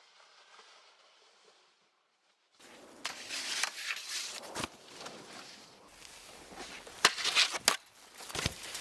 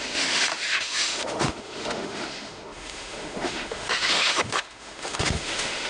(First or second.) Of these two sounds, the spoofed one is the second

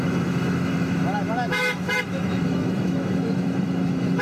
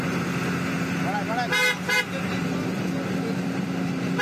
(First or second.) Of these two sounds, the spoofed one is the first